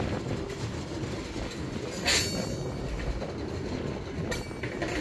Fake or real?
real